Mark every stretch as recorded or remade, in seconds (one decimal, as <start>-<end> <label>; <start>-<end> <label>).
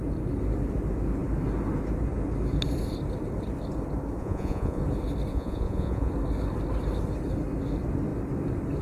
0.0-4.2 recorded; 4.2-4.8 remade; 4.8-5.3 recorded; 5.3-6.1 remade; 6.1-8.8 recorded